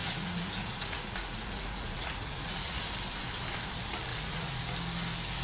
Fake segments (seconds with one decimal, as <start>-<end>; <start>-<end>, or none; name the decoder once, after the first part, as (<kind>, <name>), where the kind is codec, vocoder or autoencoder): 0.0-2.8 (vocoder, Vocos); 4.1-4.6